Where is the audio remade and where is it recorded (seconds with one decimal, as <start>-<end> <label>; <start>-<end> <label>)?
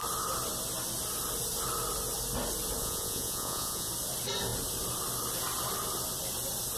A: 0.0-2.8 recorded; 2.8-3.9 remade; 3.9-6.8 recorded